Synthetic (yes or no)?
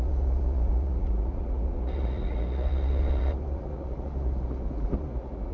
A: yes